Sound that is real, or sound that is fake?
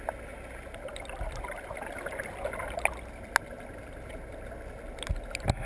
real